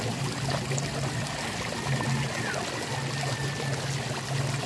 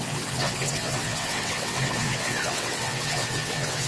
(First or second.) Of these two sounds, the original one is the first